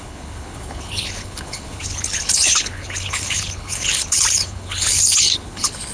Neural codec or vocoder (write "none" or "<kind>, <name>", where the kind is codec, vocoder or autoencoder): codec, HILCodec